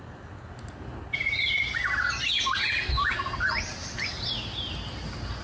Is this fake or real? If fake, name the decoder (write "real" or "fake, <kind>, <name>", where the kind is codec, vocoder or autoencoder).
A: real